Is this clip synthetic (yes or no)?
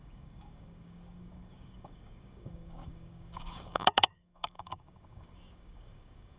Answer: yes